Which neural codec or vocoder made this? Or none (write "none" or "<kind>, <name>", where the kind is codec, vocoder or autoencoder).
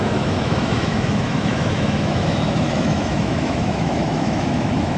autoencoder, DAC-VAE